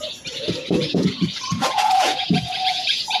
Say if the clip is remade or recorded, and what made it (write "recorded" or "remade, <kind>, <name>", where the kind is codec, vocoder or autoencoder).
remade, vocoder, Vocos